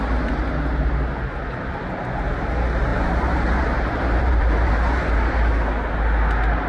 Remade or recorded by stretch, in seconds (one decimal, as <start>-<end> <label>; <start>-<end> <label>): 0.0-2.9 recorded; 2.9-5.5 remade; 5.5-6.7 recorded